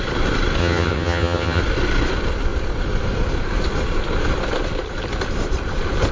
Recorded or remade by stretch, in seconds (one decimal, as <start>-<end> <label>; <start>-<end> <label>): 0.0-0.6 recorded; 0.6-1.6 remade; 1.6-6.1 recorded